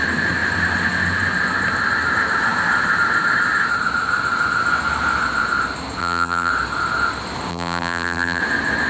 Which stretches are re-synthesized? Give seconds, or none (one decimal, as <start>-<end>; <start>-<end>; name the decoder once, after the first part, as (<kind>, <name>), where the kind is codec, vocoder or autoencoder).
6.0-6.5 (vocoder, BigVGAN v2); 7.5-8.4